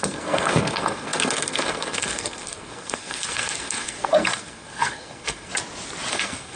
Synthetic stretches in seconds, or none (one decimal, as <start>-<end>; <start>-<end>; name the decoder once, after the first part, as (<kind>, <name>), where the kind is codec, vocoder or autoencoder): 0.0-5.5 (codec, SNAC); 6.1-6.6